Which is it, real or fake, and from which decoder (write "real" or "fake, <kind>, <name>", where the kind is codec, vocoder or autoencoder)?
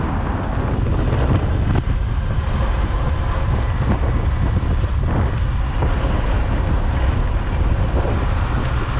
real